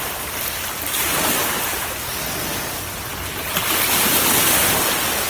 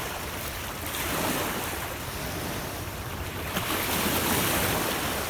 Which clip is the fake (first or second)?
second